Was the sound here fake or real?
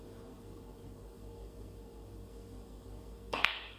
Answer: fake